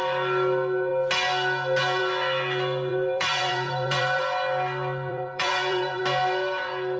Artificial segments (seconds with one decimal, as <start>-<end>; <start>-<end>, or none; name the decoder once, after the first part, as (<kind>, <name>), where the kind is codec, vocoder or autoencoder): 2.9-4.2 (vocoder, BigVGAN v2); 5.1-6.0